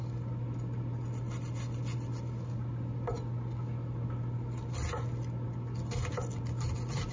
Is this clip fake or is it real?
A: real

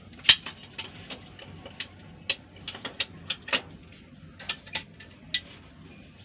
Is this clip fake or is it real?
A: real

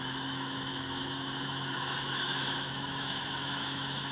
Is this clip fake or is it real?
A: fake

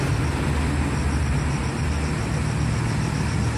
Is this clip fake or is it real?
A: real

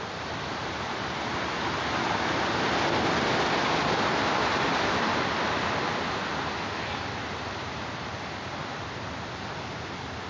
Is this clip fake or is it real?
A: real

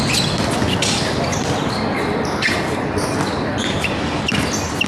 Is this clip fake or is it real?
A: real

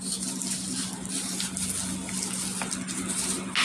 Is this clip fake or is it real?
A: real